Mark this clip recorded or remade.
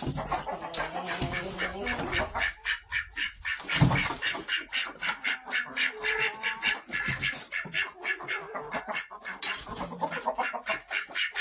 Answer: recorded